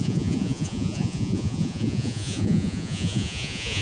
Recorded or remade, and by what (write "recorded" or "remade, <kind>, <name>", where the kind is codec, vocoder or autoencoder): remade, vocoder, Vocos